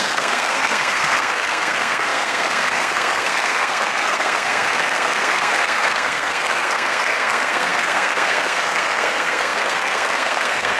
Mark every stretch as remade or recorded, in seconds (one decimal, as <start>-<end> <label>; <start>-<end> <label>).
0.0-10.8 remade